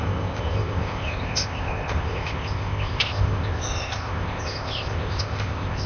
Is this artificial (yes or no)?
yes